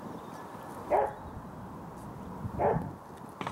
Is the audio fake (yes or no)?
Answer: no